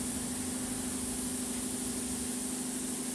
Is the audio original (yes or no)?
yes